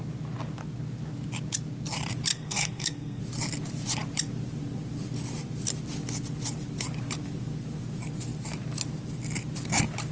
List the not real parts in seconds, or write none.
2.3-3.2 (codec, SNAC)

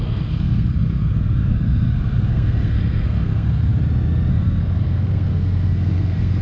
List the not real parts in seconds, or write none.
0.0-3.7 (codec, SNAC); 4.3-6.4

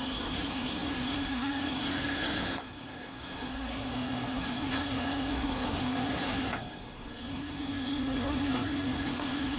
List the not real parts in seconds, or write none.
0.0-9.6 (codec, SNAC)

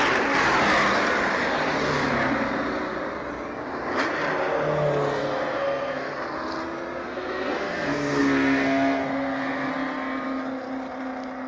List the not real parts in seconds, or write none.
5.1-6.1 (codec, SNAC); 7.0-9.7

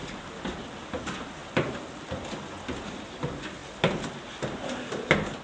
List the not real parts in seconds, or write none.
none

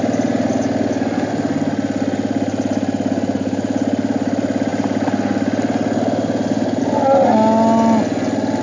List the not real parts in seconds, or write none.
none

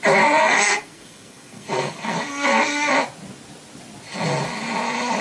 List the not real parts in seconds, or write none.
0.4-2.9 (codec, SNAC)

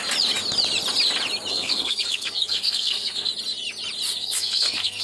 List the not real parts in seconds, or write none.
1.5-3.3 (codec, SNAC); 4.2-5.0